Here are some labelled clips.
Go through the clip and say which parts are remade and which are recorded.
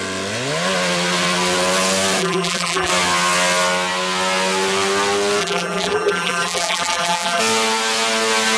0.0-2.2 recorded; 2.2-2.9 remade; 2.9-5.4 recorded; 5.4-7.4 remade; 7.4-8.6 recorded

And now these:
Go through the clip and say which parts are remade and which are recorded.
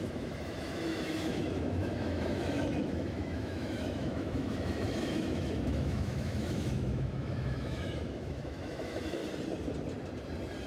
0.0-9.2 remade; 9.2-10.7 recorded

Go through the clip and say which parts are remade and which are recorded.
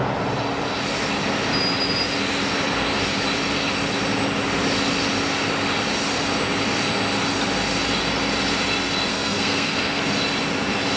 0.0-9.1 recorded; 9.1-10.0 remade; 10.0-11.0 recorded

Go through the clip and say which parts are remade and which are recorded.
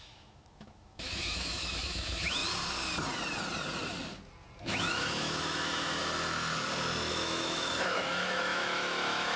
0.0-2.4 remade; 2.4-4.6 recorded; 4.6-6.0 remade; 6.0-7.1 recorded; 7.1-9.4 remade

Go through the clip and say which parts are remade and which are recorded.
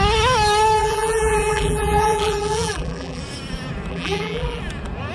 0.0-0.8 recorded; 0.8-3.2 remade; 3.2-3.9 recorded; 3.9-4.6 remade; 4.6-5.1 recorded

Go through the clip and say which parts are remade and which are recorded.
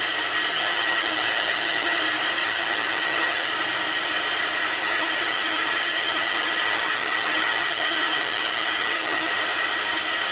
0.0-0.5 recorded; 0.5-2.0 remade; 2.0-2.4 recorded; 2.4-3.5 remade; 3.5-4.8 recorded; 4.8-9.3 remade; 9.3-10.3 recorded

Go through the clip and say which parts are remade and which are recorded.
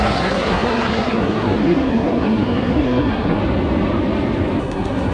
0.0-3.4 remade; 3.4-4.6 recorded; 4.6-5.1 remade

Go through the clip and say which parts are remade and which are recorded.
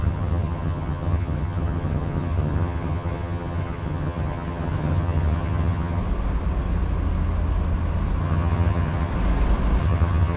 0.0-6.0 remade; 6.0-8.2 recorded; 8.2-9.1 remade; 9.1-9.8 recorded; 9.8-10.4 remade